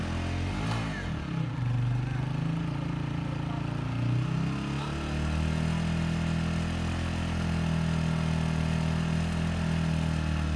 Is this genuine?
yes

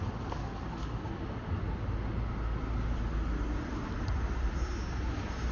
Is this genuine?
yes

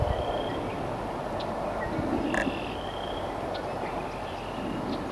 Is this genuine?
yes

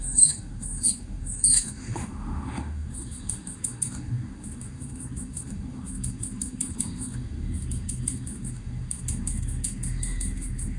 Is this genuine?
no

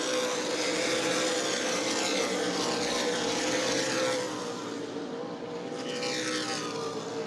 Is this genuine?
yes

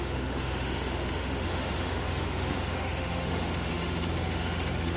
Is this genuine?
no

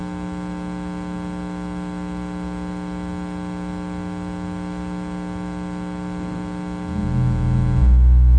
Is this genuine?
yes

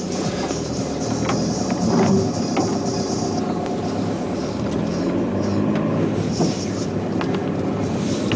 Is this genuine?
yes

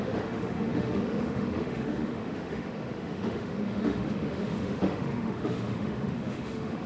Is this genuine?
no